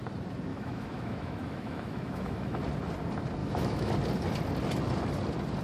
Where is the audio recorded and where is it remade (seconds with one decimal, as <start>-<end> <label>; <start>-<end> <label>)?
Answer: 0.0-0.5 recorded; 0.5-2.6 remade; 2.6-3.4 recorded; 3.4-3.9 remade; 3.9-5.6 recorded